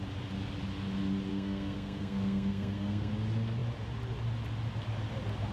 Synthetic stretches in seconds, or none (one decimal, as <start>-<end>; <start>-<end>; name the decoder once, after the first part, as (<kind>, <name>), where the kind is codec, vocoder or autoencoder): 1.3-3.1 (codec, SNAC)